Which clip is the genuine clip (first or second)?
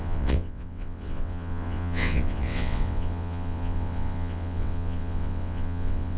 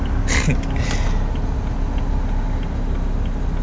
second